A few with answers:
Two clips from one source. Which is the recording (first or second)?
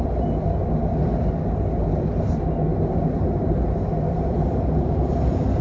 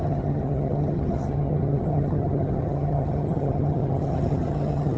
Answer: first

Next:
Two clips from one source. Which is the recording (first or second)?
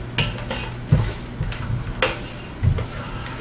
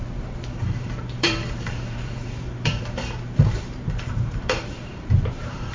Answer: first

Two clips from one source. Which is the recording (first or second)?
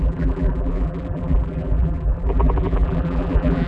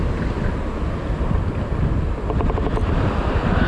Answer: second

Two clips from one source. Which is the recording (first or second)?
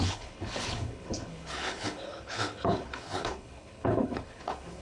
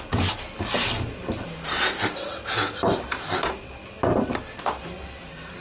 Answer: second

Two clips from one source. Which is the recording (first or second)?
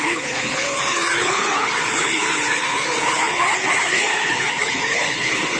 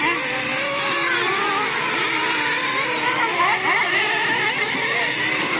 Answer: second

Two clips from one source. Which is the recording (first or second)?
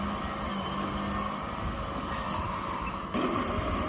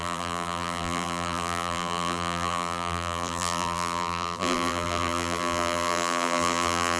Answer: first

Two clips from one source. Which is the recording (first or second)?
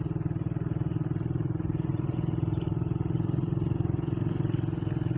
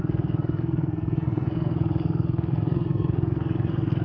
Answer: first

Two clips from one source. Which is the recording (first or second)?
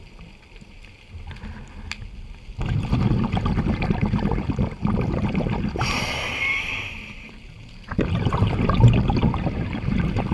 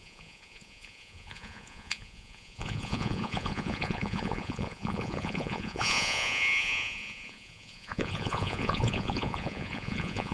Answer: first